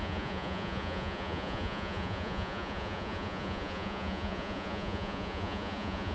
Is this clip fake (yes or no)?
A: yes